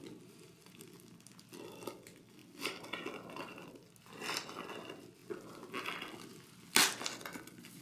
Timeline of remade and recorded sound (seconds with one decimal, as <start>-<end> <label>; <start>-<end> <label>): 0.0-7.8 recorded